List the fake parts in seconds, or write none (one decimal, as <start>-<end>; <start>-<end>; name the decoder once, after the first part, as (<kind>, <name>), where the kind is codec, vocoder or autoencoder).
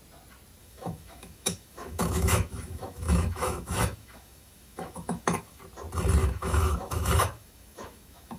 0.6-5.6 (autoencoder, DAC-VAE); 6.2-8.4